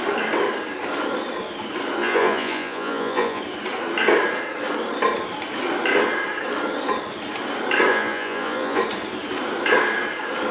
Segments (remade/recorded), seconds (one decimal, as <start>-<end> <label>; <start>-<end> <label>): 0.0-2.0 recorded; 2.0-3.4 remade; 3.4-7.9 recorded; 7.9-8.8 remade; 8.8-10.5 recorded